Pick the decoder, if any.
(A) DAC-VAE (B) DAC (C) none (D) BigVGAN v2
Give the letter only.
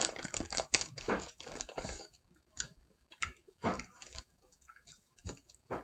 B